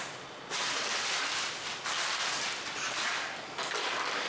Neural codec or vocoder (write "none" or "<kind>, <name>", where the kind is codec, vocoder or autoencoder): none